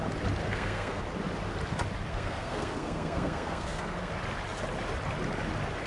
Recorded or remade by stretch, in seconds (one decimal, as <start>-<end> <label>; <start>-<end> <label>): 0.0-0.4 recorded; 0.4-1.0 remade; 1.0-2.1 recorded; 2.1-4.1 remade; 4.1-5.9 recorded